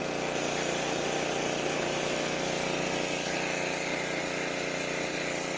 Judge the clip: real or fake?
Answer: real